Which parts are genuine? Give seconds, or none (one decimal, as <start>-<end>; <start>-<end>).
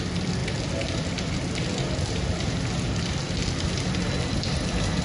0.0-5.0